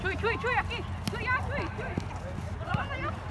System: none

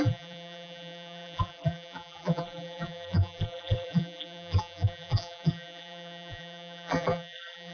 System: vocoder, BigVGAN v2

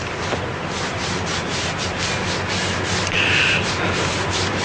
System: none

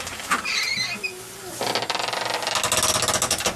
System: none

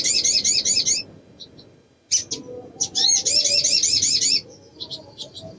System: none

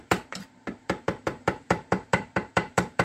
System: vocoder, BigVGAN v2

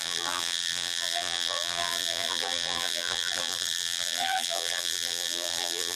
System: vocoder, BigVGAN v2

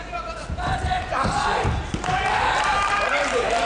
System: none